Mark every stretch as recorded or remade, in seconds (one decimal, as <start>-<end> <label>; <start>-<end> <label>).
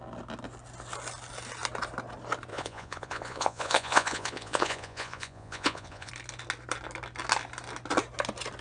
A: 0.0-2.5 recorded; 2.5-6.1 remade; 6.1-8.6 recorded